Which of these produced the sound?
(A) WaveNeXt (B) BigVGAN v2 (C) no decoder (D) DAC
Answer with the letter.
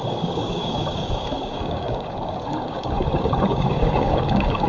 D